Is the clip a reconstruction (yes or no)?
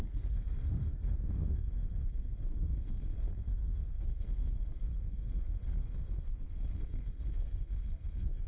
yes